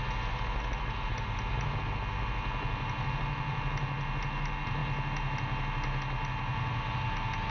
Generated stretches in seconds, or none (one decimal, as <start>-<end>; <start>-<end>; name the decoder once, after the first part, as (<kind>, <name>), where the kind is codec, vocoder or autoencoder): none